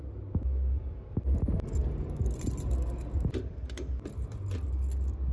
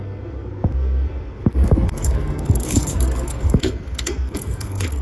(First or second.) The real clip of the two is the first